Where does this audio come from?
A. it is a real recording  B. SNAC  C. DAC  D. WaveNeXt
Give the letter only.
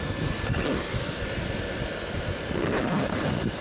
A